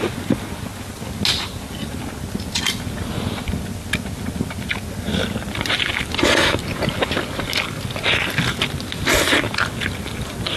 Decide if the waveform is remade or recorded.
recorded